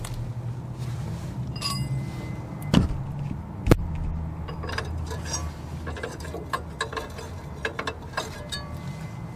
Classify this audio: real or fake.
real